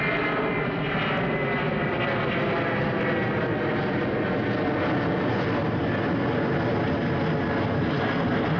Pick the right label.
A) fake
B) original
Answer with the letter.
B